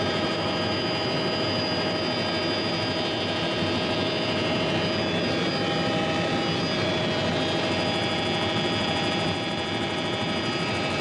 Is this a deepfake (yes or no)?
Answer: no